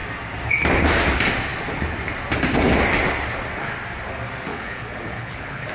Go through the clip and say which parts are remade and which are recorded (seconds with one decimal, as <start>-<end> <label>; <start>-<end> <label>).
0.0-4.5 recorded; 4.5-5.7 remade